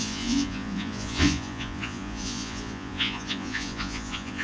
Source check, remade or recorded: remade